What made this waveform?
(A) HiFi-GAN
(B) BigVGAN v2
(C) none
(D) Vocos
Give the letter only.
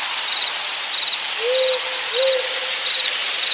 C